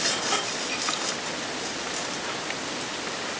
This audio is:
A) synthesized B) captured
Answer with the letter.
B